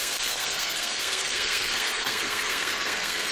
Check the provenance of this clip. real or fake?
fake